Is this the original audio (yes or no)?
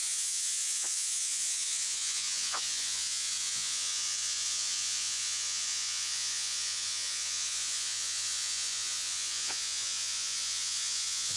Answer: no